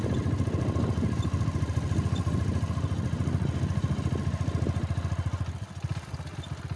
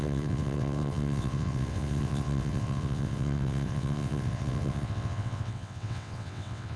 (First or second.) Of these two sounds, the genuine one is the first